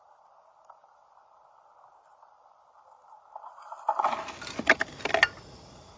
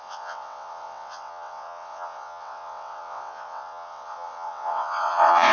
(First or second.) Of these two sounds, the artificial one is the second